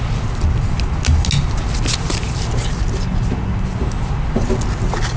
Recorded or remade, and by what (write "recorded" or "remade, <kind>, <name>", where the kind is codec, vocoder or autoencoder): recorded